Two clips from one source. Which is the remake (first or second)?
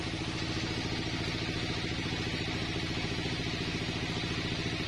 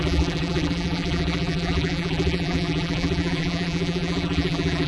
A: second